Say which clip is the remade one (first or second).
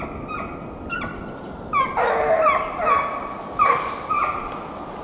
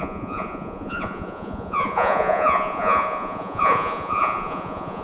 second